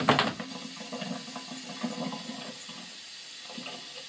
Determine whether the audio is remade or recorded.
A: recorded